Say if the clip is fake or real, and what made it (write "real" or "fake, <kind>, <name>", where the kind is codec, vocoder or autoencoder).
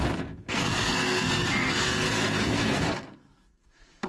fake, codec, SNAC